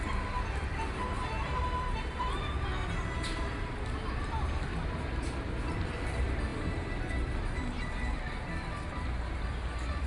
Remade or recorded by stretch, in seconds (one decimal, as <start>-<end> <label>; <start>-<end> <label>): 0.0-2.7 remade; 2.7-4.2 recorded; 4.2-6.5 remade; 6.5-7.4 recorded; 7.4-10.1 remade